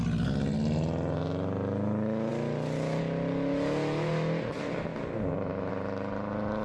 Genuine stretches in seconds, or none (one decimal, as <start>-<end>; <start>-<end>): 0.0-6.6